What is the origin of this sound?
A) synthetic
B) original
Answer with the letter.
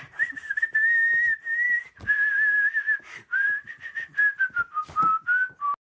B